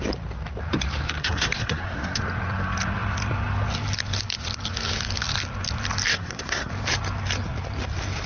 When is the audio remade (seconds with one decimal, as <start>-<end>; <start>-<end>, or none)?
1.2-2.2; 6.1-6.7